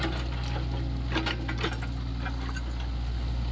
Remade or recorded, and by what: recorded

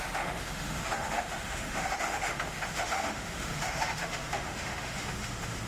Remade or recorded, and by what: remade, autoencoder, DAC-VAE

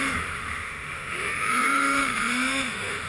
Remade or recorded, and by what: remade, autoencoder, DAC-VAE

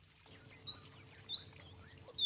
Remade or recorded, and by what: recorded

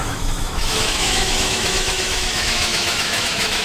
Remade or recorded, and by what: remade, autoencoder, DAC-VAE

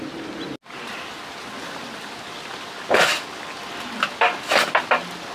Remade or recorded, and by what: recorded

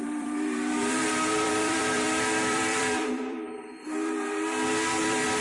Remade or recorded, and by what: remade, vocoder, BigVGAN v2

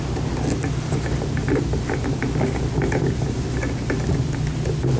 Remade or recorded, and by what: recorded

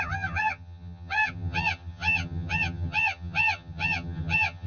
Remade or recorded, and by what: remade, vocoder, HiFi-GAN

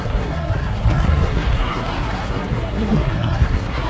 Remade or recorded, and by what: remade, codec, SNAC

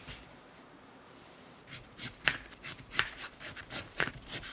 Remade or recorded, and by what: remade, vocoder, BigVGAN v2